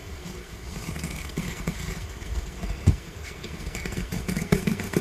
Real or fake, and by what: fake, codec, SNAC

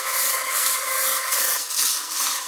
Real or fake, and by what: fake, codec, SNAC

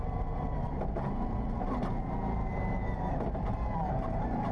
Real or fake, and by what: real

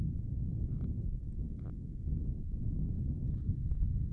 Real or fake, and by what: real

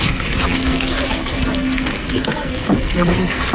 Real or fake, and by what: fake, codec, SNAC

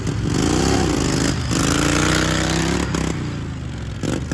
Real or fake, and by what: real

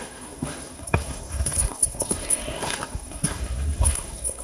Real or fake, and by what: fake, codec, SNAC